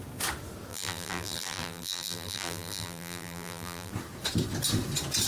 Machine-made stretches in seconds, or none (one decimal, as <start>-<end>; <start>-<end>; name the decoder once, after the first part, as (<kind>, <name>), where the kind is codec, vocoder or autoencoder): 0.7-3.9 (vocoder, BigVGAN v2)